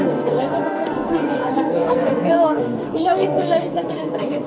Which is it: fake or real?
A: fake